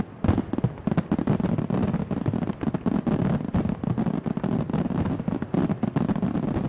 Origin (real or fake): real